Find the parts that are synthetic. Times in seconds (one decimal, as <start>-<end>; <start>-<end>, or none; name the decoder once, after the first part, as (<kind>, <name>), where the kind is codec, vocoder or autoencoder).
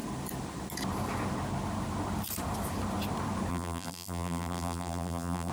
3.5-5.5 (vocoder, BigVGAN v2)